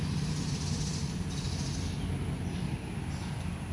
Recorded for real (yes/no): yes